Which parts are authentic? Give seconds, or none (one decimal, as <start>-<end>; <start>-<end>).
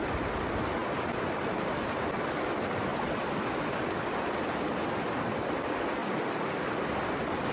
0.0-7.5